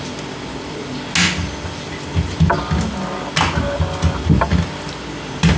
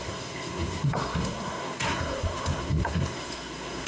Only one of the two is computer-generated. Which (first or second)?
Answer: second